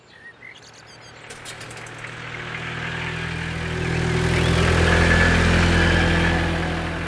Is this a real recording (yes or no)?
yes